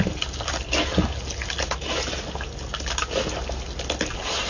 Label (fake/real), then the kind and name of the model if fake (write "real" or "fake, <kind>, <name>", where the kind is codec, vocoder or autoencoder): real